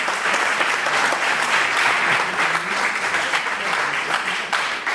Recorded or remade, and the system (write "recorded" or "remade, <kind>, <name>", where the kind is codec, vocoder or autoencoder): recorded